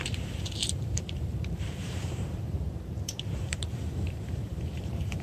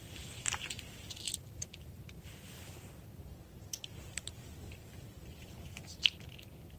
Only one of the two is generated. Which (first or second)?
first